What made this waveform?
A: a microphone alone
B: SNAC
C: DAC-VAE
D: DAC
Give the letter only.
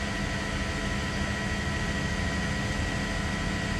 A